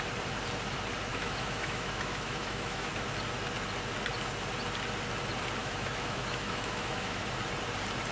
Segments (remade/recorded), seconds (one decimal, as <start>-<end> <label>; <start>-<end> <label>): 0.0-1.1 recorded; 1.1-2.9 remade; 2.9-5.6 recorded; 5.6-7.2 remade; 7.2-8.1 recorded